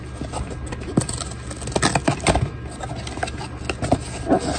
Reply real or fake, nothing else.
real